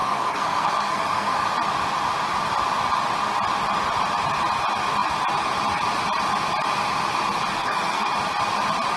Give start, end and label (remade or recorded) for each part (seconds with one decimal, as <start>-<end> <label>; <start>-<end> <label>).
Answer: 0.0-1.5 remade; 1.5-7.5 recorded; 7.5-8.1 remade; 8.1-9.0 recorded